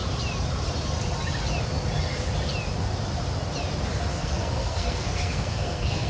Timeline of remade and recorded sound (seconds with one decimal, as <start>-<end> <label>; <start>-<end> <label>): 0.0-4.1 recorded; 4.1-6.1 remade